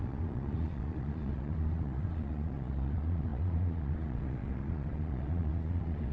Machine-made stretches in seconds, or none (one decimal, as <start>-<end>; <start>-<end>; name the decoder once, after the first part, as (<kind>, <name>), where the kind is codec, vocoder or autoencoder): 0.0-6.1 (vocoder, Vocos)